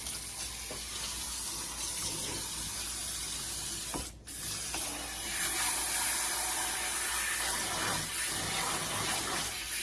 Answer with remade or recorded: recorded